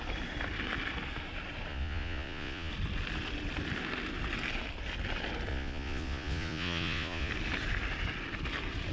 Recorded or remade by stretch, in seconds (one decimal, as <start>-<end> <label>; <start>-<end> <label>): 0.0-1.7 recorded; 1.7-2.7 remade; 2.7-5.5 recorded; 5.5-7.3 remade; 7.3-8.9 recorded